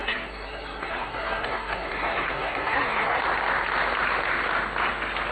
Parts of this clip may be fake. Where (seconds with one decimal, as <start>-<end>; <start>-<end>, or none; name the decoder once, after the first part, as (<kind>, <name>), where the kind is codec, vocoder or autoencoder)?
0.0-3.2 (codec, SNAC)